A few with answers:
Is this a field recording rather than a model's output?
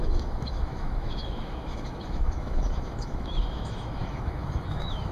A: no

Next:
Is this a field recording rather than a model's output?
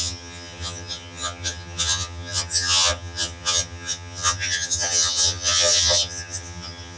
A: no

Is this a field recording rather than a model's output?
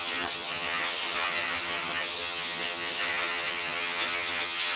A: no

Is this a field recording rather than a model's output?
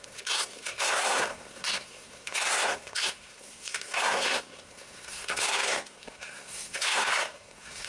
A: no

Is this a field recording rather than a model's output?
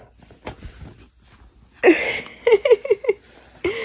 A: yes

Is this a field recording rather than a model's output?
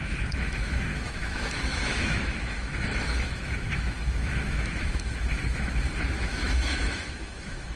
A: no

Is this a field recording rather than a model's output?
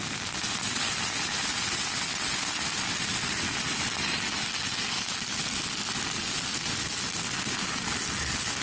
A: yes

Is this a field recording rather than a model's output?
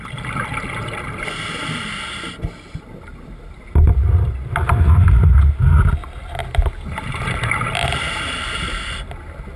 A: yes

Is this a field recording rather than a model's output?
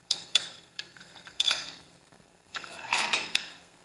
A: no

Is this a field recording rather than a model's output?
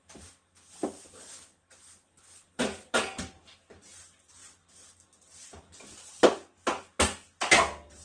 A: yes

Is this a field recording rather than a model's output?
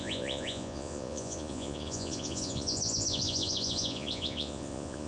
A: no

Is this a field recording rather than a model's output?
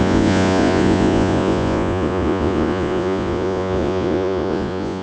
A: no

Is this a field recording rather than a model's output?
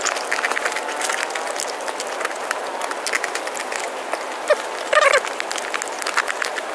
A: yes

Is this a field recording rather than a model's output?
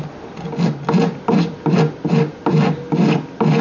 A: yes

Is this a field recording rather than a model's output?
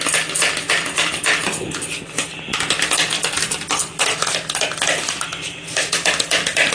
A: yes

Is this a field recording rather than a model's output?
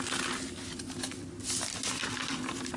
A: yes